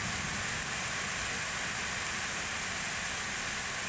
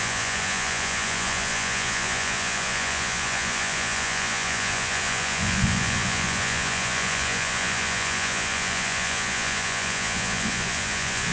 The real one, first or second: first